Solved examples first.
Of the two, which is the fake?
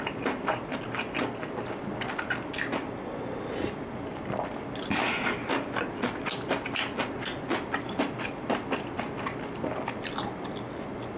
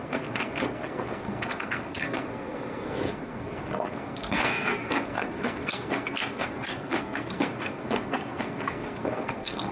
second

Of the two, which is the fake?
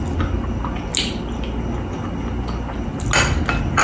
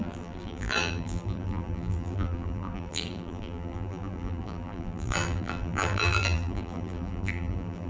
second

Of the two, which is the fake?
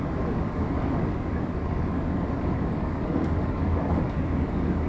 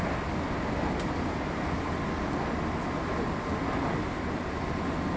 first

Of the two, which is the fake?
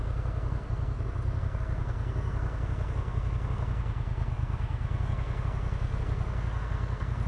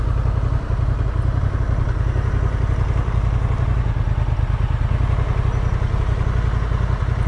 first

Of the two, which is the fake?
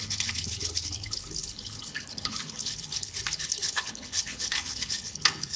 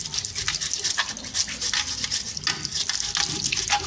first